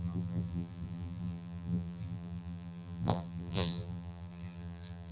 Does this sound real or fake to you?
fake